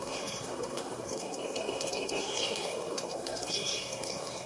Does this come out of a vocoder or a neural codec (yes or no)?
yes